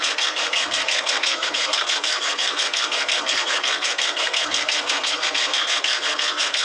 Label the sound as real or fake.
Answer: fake